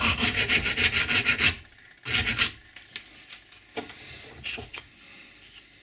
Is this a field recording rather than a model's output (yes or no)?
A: yes